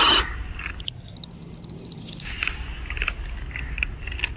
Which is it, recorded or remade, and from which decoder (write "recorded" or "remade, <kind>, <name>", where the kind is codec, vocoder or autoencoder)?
recorded